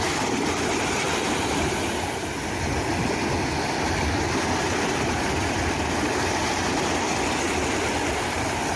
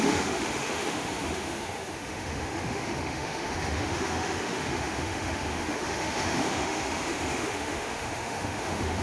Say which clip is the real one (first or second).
first